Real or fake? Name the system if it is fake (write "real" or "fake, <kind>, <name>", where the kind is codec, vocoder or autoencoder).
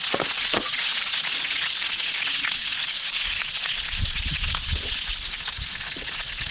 fake, vocoder, Vocos